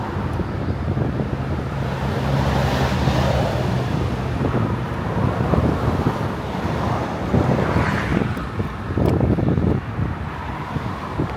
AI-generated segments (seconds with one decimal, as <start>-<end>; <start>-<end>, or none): none